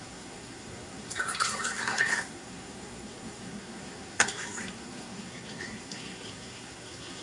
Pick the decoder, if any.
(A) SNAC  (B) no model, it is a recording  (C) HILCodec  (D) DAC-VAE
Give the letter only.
A